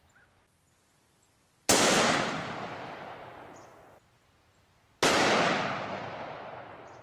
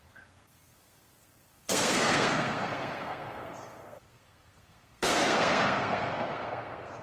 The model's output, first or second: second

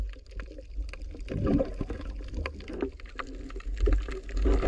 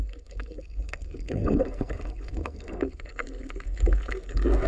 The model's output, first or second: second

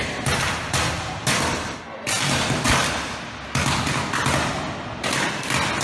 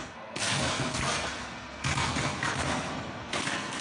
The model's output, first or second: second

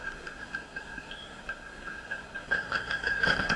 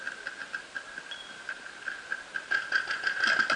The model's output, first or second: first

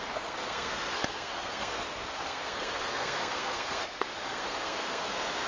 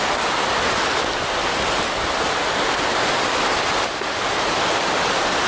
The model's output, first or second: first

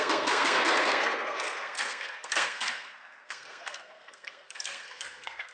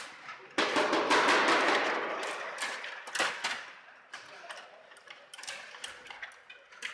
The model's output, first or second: first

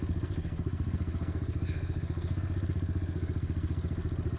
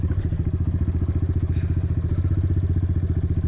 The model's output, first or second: first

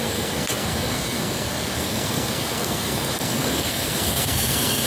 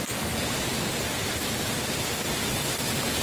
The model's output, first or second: first